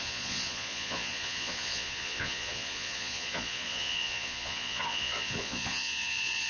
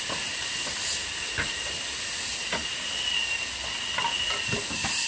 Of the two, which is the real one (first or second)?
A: second